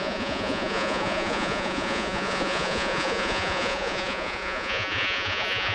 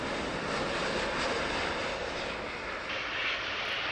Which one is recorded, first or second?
second